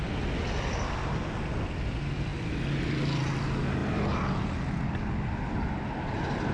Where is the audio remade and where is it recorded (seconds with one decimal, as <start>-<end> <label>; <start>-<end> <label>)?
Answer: 0.0-6.5 recorded